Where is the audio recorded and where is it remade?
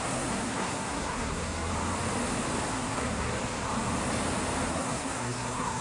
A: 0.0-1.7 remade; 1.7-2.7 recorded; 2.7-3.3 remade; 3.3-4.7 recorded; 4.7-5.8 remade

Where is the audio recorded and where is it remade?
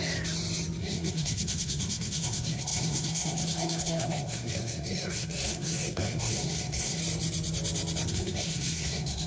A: 0.0-0.8 recorded; 0.8-7.0 remade; 7.0-8.1 recorded; 8.1-9.3 remade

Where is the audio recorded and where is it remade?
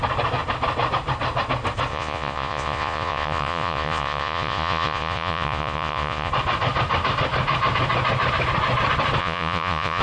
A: 0.0-1.9 recorded; 1.9-6.3 remade; 6.3-9.2 recorded; 9.2-10.0 remade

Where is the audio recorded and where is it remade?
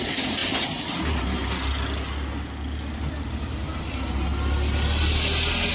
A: 0.0-5.7 recorded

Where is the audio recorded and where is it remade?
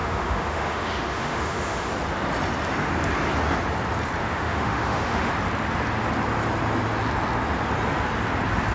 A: 0.0-1.9 remade; 1.9-4.2 recorded; 4.2-5.3 remade; 5.3-8.7 recorded